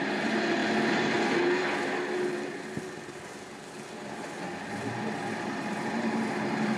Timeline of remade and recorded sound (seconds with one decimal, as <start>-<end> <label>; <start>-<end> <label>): 0.0-0.6 remade; 0.6-4.7 recorded; 4.7-6.8 remade

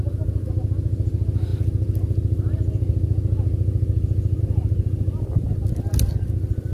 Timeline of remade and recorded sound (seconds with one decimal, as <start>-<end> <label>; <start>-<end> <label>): 0.0-6.7 recorded

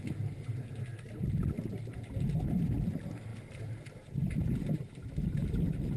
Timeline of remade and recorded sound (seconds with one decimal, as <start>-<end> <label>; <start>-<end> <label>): 0.0-3.3 recorded; 3.3-5.6 remade; 5.6-6.0 recorded

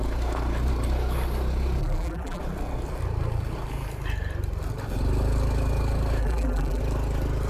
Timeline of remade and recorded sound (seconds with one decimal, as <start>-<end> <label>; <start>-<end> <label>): 0.0-1.8 recorded; 1.8-2.4 remade; 2.4-6.2 recorded; 6.2-6.8 remade; 6.8-7.5 recorded